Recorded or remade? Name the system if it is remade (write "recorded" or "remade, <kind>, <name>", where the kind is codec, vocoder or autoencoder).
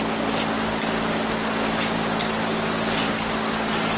recorded